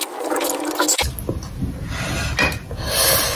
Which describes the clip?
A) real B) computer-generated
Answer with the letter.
A